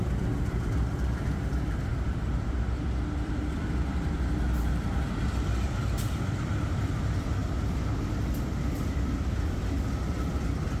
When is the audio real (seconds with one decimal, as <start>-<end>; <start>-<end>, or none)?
7.4-8.4